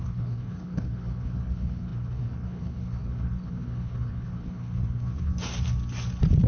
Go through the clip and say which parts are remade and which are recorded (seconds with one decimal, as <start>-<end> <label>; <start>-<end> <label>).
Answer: 0.0-5.3 remade; 5.3-6.5 recorded